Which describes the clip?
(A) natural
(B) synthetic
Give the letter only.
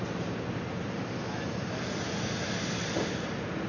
A